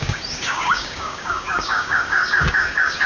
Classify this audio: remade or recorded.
remade